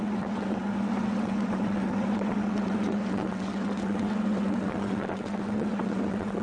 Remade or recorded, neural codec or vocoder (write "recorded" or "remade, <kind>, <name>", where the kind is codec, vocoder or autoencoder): remade, vocoder, WaveNeXt